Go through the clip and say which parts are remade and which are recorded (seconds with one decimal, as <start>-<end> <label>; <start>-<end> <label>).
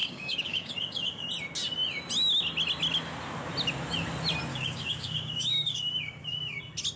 0.0-1.3 remade; 1.3-4.5 recorded; 4.5-6.6 remade; 6.6-7.0 recorded